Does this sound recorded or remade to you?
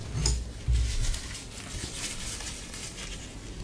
recorded